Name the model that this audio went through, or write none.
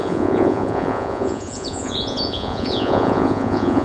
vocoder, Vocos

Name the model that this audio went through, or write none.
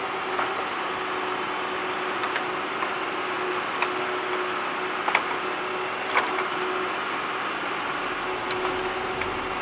none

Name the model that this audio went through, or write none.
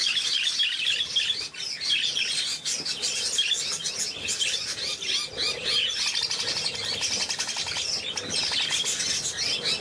none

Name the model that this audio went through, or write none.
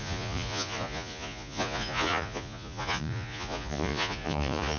vocoder, Vocos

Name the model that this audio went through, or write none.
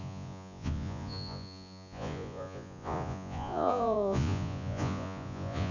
vocoder, Vocos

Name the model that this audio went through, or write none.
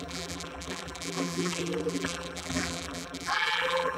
vocoder, BigVGAN v2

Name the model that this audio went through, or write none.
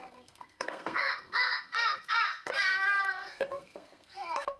codec, SNAC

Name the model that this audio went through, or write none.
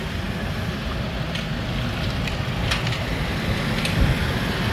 none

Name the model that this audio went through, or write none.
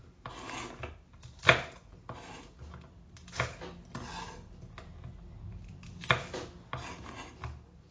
none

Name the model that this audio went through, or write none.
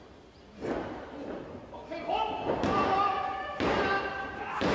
none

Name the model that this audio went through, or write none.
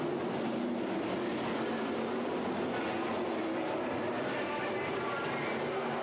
none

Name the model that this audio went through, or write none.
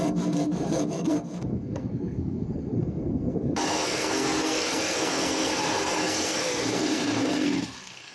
codec, SNAC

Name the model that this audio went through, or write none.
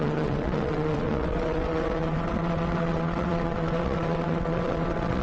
vocoder, WaveNeXt